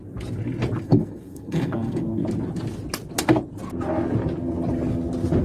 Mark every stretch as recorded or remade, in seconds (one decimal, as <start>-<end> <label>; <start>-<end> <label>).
0.0-0.8 recorded; 0.8-2.2 remade; 2.2-5.4 recorded